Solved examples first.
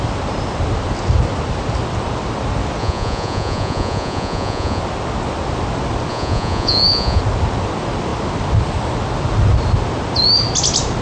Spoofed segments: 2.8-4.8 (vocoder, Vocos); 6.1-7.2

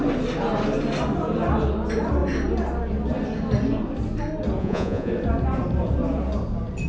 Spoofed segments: 4.6-5.1 (vocoder, Vocos)

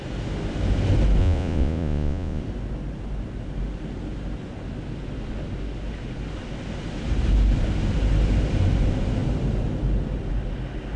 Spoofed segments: 1.2-2.4 (vocoder, Vocos)